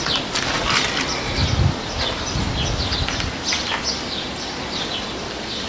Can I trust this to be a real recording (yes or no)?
yes